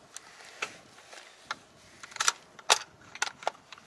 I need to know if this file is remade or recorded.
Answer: recorded